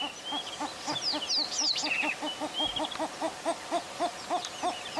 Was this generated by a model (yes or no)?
no